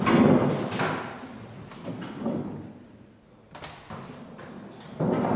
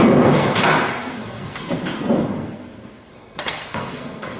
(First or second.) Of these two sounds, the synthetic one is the second